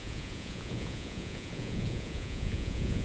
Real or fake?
fake